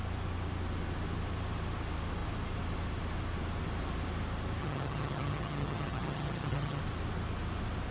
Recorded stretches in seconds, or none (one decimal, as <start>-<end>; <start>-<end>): 0.0-4.6; 6.8-7.9